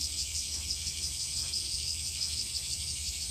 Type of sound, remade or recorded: remade